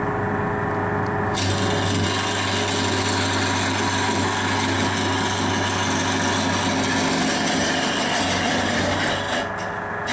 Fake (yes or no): no